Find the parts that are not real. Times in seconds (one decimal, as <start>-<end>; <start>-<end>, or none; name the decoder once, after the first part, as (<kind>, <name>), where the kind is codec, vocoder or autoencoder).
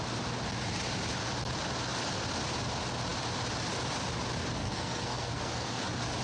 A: 4.6-5.8 (codec, SNAC)